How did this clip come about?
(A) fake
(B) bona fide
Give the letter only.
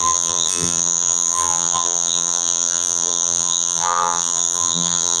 A